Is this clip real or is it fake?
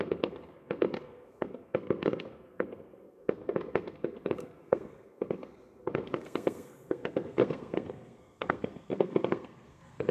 fake